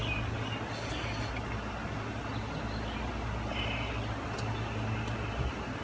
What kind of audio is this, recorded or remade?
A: recorded